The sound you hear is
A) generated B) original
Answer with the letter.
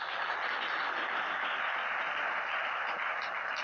B